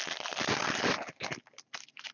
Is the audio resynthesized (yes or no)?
no